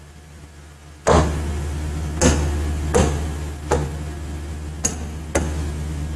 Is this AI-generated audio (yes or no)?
no